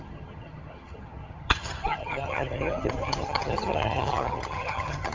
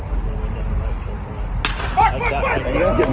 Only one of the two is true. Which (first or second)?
second